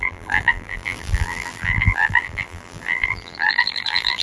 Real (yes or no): no